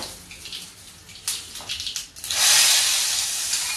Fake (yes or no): no